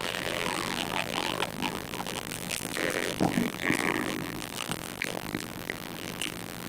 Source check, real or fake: fake